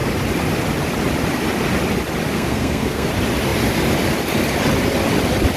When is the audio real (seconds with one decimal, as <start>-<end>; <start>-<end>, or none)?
0.0-2.3; 3.1-5.6